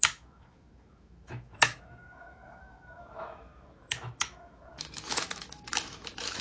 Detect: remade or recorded remade